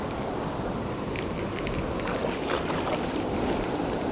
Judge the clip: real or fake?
real